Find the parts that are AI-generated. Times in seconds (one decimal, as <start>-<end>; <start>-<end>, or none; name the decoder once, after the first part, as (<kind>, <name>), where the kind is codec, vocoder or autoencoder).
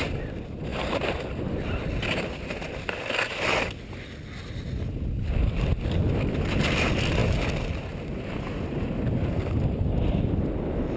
none